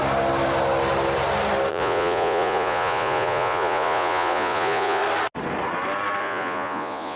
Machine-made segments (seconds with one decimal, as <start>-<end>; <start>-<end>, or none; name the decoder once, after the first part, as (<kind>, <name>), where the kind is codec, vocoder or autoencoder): 1.7-5.0 (vocoder, Vocos); 6.2-7.2

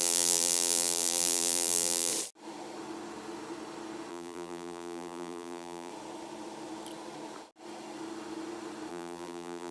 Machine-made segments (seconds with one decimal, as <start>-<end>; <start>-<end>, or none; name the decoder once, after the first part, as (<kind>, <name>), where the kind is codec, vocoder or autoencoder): 0.0-2.1 (vocoder, BigVGAN v2); 4.1-5.9; 8.9-9.7

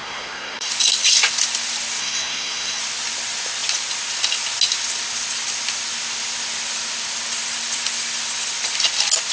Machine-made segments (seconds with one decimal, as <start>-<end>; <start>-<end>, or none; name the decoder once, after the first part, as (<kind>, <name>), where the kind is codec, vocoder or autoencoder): 0.0-0.7 (codec, SNAC); 2.0-2.8

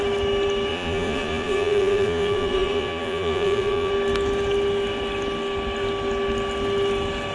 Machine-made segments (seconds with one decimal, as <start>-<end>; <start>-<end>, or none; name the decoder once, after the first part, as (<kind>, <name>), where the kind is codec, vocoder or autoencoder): 0.7-3.9 (vocoder, Vocos)

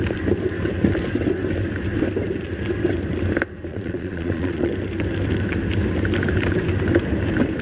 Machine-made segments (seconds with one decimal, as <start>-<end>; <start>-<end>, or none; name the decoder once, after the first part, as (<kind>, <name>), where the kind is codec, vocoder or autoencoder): 3.7-4.7 (vocoder, Vocos)